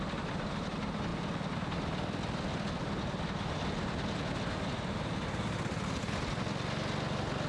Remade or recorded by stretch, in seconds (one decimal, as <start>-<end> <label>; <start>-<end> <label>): 0.0-7.5 recorded